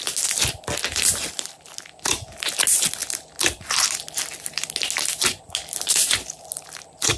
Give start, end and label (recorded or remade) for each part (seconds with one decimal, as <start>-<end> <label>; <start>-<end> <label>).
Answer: 0.0-7.2 recorded